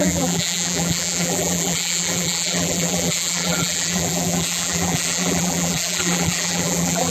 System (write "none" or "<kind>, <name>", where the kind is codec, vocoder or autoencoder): vocoder, BigVGAN v2